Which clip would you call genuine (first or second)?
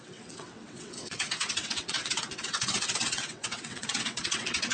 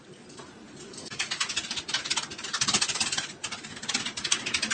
second